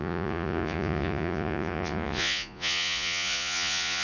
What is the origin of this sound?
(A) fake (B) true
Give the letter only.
A